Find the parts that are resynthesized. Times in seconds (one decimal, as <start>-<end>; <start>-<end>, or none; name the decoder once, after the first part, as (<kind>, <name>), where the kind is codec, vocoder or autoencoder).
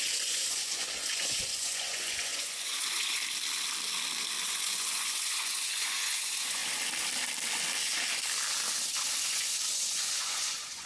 0.0-3.2 (vocoder, Vocos); 4.4-6.6; 9.2-10.9